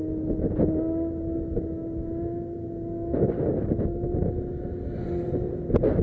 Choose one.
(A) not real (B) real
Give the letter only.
B